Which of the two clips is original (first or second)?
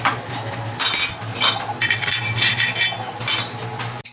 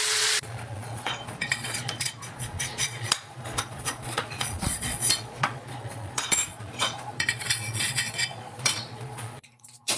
first